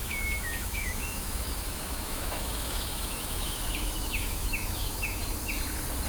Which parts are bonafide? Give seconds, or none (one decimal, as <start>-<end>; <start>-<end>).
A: 5.2-6.1

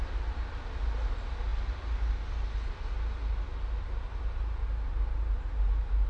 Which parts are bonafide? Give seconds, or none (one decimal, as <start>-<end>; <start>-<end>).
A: 0.0-6.1

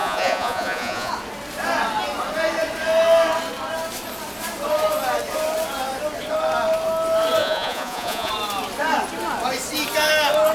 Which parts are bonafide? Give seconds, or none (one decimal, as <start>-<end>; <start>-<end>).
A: 1.1-7.4; 8.3-10.5

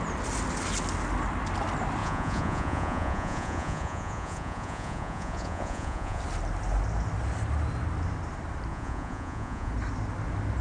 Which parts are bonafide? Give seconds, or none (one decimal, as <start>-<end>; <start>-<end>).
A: 0.0-2.0; 6.2-8.7; 9.7-10.6

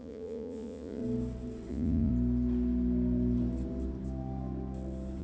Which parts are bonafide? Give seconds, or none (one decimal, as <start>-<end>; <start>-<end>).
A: 1.0-1.7; 2.1-5.2

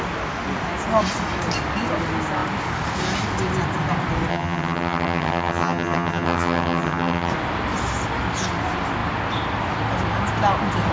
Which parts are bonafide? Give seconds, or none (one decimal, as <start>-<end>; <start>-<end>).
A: 0.0-4.3; 7.3-10.9

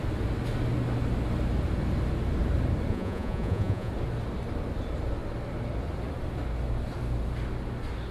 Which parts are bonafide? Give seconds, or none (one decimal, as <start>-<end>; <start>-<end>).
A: 0.0-2.9; 3.9-8.1

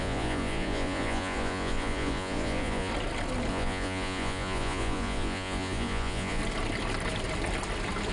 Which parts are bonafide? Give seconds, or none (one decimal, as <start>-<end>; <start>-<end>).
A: 2.9-3.5; 6.4-8.1